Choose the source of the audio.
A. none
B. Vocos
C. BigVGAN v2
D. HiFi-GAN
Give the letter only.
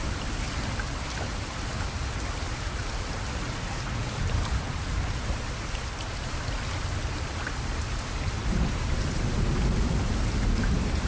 A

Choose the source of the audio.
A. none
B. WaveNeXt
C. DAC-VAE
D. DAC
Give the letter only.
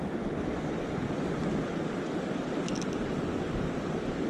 A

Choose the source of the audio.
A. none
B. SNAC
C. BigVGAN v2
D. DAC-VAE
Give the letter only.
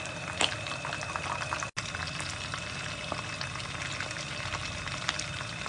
A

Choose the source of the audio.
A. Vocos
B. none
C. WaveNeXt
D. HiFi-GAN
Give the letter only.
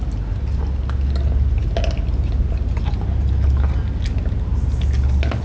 B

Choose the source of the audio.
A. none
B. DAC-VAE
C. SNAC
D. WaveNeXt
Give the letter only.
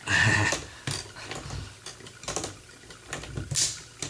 A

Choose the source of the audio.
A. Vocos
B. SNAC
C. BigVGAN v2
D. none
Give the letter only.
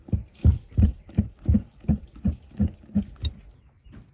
D